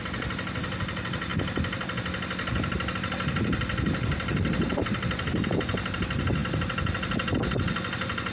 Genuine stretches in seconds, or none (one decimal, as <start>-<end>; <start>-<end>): 0.0-4.0; 5.2-8.3